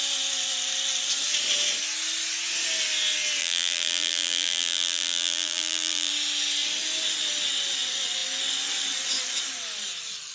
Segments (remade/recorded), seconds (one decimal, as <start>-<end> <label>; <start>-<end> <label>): 0.0-3.4 recorded; 3.4-6.1 remade; 6.1-10.3 recorded